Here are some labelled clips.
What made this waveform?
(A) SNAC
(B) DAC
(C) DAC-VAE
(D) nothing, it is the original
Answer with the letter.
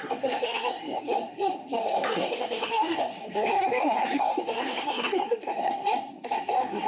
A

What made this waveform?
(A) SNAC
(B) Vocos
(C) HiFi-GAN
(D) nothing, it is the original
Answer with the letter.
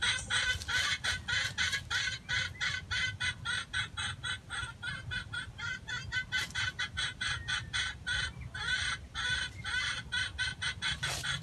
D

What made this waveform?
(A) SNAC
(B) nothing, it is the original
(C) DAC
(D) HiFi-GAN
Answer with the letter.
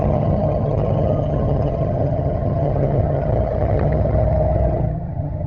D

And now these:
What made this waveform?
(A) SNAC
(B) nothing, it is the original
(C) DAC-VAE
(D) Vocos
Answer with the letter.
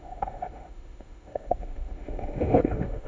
C